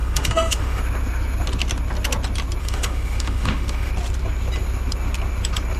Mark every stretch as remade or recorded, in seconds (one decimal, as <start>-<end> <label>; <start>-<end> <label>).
0.0-0.8 remade; 0.8-2.6 recorded; 2.6-3.9 remade; 3.9-5.8 recorded